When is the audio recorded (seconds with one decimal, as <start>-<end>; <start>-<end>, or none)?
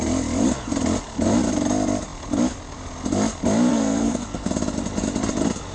0.0-3.7; 4.5-5.7